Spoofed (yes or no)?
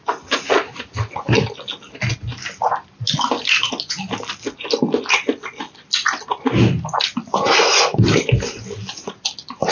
no